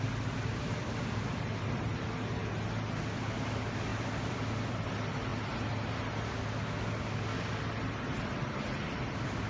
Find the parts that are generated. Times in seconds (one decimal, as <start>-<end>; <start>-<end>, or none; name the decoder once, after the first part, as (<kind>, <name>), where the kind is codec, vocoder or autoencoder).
3.9-4.8 (vocoder, BigVGAN v2)